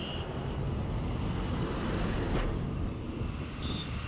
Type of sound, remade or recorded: recorded